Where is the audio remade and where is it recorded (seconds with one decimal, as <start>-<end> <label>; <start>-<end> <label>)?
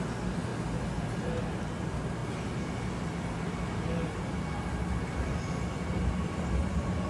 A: 0.0-7.1 recorded